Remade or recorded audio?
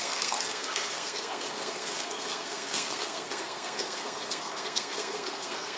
remade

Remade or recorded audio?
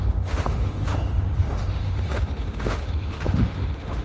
remade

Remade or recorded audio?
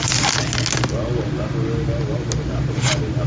recorded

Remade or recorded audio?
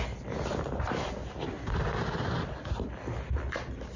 recorded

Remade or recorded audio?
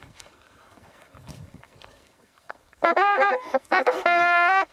remade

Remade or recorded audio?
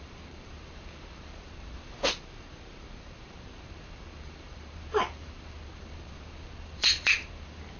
remade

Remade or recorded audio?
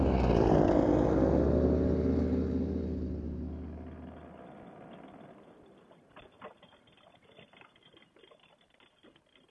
recorded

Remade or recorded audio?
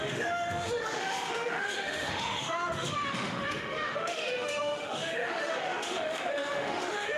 remade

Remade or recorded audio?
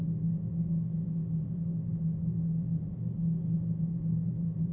recorded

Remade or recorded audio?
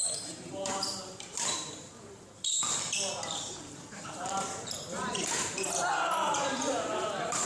remade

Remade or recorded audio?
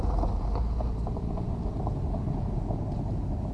recorded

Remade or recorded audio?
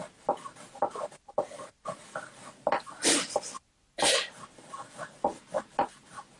recorded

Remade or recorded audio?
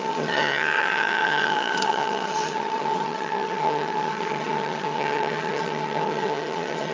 remade